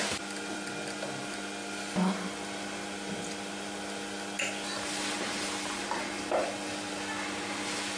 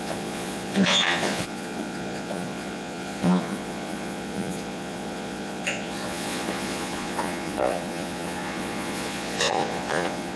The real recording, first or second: first